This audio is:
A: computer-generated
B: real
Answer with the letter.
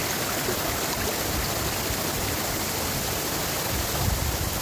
B